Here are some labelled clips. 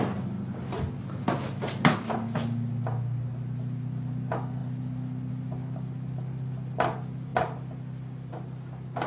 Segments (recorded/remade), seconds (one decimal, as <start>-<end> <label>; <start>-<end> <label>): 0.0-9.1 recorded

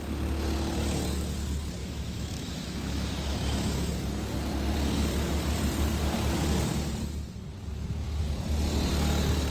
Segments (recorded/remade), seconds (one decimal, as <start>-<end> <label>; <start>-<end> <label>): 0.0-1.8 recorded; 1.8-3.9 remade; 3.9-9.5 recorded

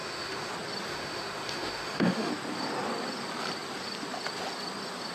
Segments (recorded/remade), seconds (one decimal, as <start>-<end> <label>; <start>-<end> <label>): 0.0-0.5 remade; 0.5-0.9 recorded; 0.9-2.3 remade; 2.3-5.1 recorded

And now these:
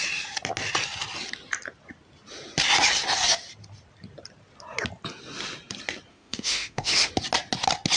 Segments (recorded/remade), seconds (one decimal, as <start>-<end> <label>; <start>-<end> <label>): 0.0-6.1 recorded; 6.1-7.1 remade; 7.1-8.0 recorded

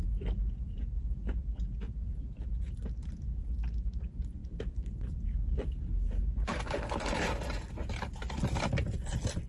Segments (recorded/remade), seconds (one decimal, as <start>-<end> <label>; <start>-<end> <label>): 0.0-9.5 recorded

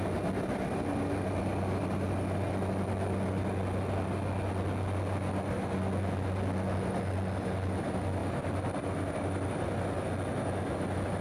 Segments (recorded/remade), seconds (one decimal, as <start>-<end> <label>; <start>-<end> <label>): 0.0-11.2 recorded

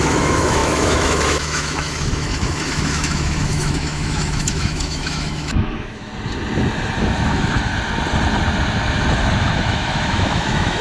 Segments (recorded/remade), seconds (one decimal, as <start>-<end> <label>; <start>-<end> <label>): 0.0-6.1 remade; 6.1-7.0 recorded; 7.0-7.7 remade; 7.7-9.4 recorded; 9.4-10.8 remade